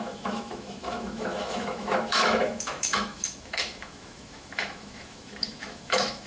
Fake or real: fake